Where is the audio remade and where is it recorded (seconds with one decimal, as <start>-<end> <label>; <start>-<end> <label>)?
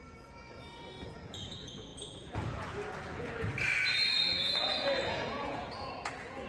0.0-3.5 remade; 3.5-4.1 recorded; 4.1-6.5 remade